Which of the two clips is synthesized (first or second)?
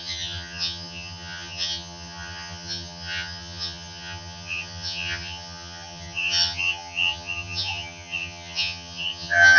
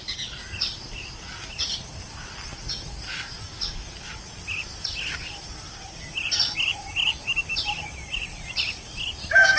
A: first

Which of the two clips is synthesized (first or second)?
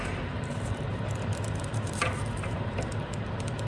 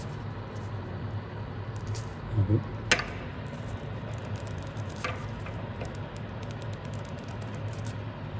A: first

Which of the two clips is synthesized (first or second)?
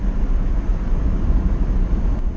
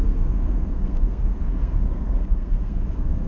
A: second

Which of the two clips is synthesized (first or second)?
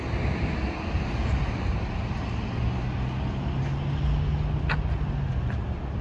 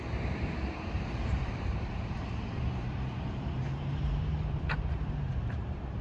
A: second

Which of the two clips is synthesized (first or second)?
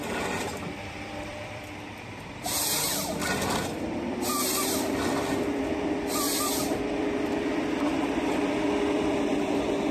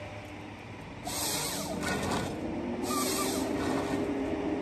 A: first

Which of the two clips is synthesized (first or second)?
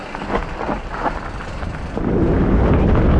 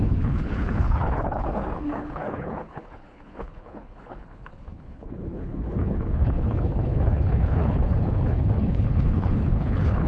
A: second